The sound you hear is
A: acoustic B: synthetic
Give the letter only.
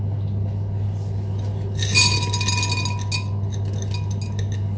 A